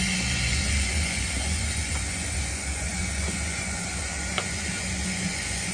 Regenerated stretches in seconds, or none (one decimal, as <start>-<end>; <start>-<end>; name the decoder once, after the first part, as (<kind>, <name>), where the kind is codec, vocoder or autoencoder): 0.0-5.7 (vocoder, Vocos)